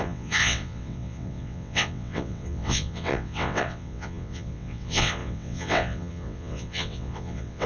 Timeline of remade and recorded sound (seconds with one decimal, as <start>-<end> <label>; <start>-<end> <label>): 0.0-7.7 remade